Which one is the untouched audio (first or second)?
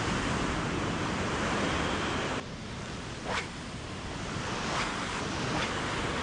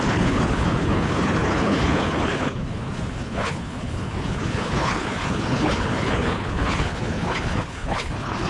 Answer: first